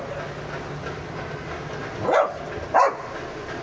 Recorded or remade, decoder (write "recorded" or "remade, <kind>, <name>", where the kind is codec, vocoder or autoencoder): recorded